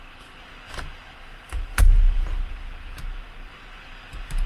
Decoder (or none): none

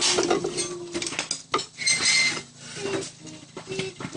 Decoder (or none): none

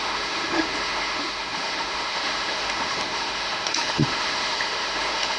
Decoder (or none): autoencoder, DAC-VAE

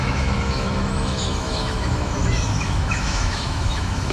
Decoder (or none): autoencoder, DAC-VAE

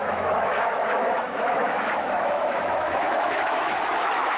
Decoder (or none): autoencoder, DAC-VAE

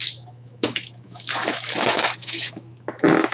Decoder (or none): autoencoder, DAC-VAE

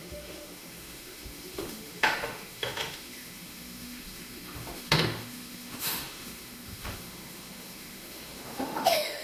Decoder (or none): autoencoder, DAC-VAE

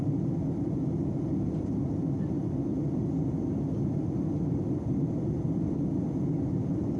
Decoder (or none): none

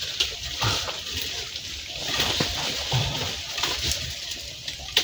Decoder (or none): none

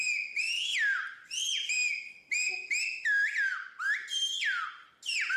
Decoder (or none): none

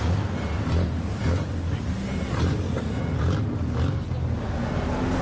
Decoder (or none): none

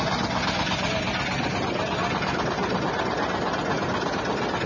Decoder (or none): none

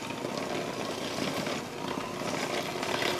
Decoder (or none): none